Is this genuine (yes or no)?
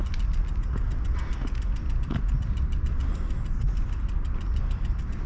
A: yes